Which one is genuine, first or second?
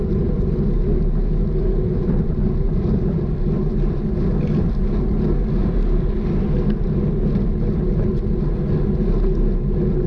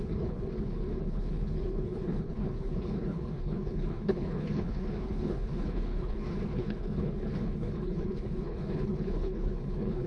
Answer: first